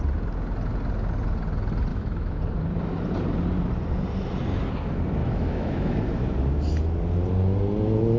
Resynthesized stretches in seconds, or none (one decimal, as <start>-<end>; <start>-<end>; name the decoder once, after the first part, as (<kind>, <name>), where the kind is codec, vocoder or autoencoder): 1.9-2.4 (autoencoder, DAC-VAE); 5.2-6.0